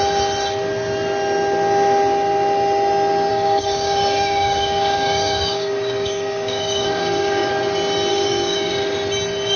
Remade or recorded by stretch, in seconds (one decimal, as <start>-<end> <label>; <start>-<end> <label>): 0.0-3.3 recorded; 3.3-7.5 remade; 7.5-8.1 recorded; 8.1-8.7 remade; 8.7-9.6 recorded